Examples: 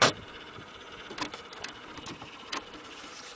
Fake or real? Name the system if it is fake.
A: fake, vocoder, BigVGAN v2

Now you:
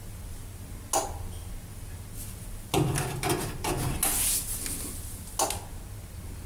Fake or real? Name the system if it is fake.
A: real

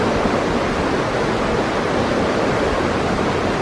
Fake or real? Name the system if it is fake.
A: real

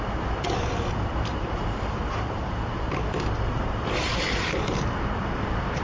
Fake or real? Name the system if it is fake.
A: fake, vocoder, BigVGAN v2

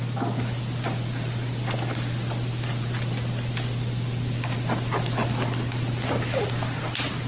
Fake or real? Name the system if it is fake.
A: real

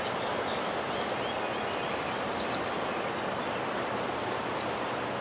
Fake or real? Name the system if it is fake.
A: real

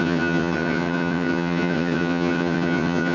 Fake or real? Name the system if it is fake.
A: fake, vocoder, HiFi-GAN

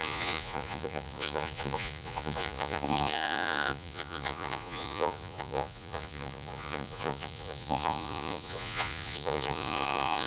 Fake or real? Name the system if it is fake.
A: fake, vocoder, Vocos